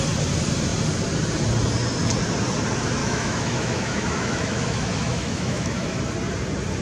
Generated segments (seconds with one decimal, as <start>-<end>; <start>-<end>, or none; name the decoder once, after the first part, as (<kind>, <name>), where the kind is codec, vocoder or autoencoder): 3.0-6.0 (autoencoder, DAC-VAE)